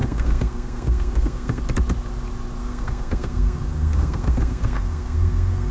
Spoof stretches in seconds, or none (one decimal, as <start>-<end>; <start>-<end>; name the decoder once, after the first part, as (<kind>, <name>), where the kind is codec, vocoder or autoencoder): 0.0-1.6 (codec, SNAC); 2.6-5.7